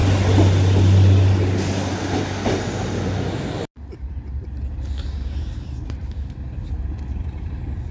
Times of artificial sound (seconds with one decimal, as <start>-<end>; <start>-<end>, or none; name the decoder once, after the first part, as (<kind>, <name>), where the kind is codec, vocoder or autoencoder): none